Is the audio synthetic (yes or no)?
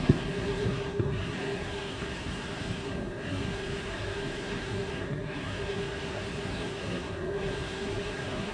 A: yes